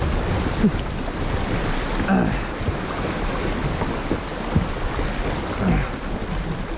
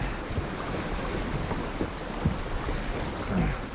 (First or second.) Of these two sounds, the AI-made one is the second